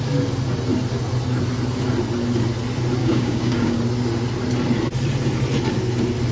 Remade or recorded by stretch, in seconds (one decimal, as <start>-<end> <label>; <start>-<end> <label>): 0.0-3.0 recorded; 3.0-3.8 remade; 3.8-6.3 recorded

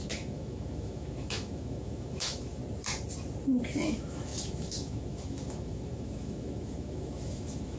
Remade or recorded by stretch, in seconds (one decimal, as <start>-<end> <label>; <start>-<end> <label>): 0.0-2.6 remade; 2.6-3.9 recorded; 3.9-7.8 remade